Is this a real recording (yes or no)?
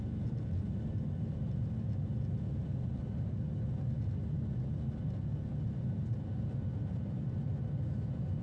yes